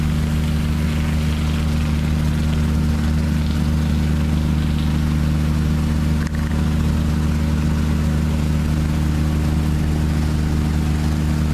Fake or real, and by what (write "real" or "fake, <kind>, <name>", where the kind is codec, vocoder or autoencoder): real